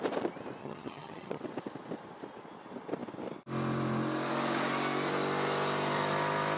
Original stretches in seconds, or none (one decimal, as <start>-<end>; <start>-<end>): 0.0-0.6; 1.4-6.6